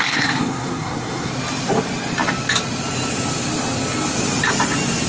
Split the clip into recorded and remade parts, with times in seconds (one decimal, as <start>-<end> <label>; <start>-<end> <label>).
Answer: 0.0-1.3 remade; 1.3-5.1 recorded